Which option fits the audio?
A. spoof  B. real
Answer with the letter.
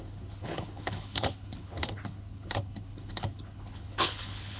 A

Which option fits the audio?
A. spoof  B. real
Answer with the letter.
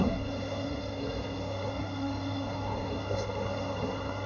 A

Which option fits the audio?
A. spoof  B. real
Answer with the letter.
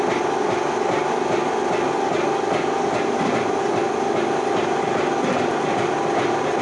B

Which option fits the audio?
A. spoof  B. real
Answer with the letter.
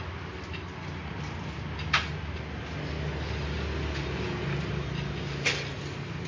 B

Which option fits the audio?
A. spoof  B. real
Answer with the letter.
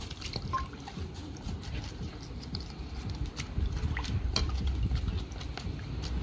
A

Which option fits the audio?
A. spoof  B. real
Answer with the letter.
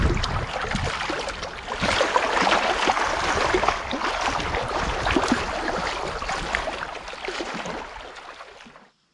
B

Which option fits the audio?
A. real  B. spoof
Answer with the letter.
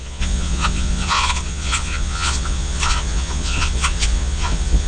B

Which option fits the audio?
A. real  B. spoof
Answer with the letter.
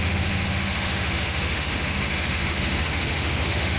B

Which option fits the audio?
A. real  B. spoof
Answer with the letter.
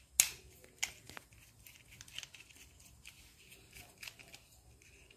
A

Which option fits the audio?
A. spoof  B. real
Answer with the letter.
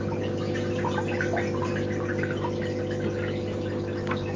B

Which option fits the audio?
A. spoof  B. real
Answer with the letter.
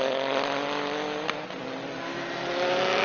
B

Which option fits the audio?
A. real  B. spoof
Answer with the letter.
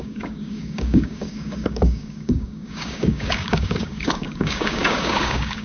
B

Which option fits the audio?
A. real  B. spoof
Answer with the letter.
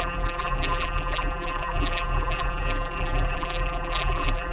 B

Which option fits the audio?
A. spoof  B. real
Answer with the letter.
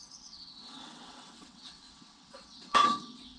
A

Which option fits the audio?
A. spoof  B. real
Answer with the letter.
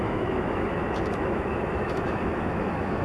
A